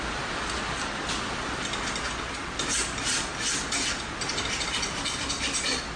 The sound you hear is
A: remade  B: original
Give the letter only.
B